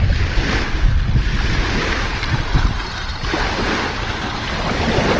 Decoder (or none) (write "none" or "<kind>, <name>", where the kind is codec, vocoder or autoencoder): none